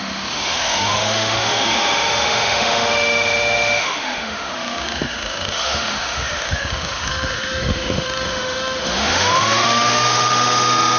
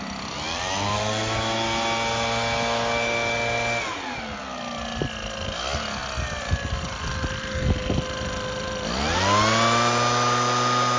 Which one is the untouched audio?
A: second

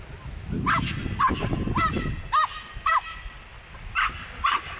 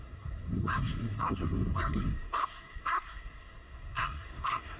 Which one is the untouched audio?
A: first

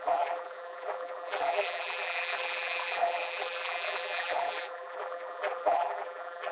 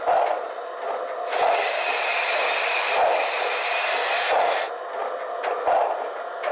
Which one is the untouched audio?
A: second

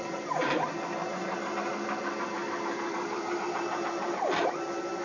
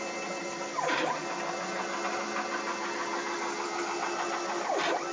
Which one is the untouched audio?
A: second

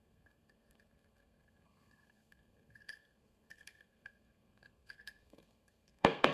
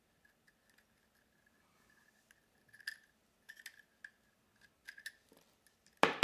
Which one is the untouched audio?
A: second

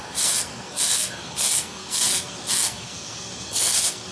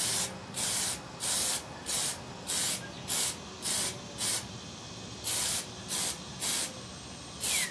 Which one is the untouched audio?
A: second